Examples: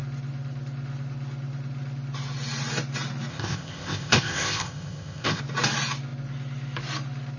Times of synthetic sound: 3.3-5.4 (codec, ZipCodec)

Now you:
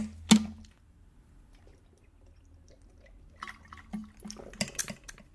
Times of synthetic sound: none